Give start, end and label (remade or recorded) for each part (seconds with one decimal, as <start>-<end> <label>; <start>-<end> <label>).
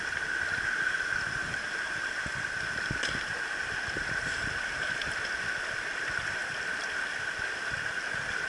0.0-8.5 recorded